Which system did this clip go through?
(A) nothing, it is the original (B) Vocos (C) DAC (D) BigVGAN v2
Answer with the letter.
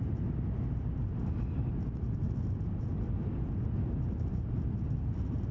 A